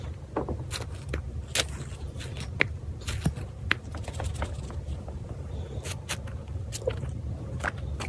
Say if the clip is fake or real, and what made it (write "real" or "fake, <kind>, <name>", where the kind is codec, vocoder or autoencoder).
real